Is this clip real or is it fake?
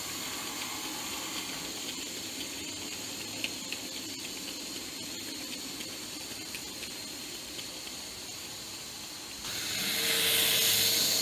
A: real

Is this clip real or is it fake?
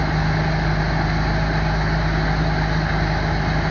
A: real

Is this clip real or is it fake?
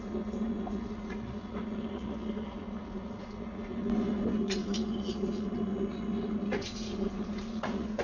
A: fake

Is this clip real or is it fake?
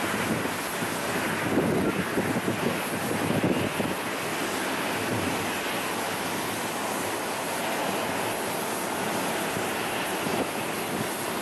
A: real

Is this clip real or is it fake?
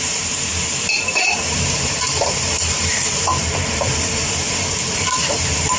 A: fake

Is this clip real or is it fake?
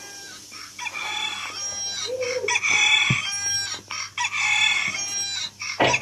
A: real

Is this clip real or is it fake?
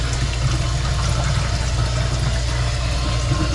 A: real